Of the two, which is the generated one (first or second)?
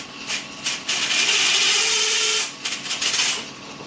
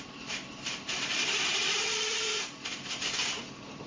second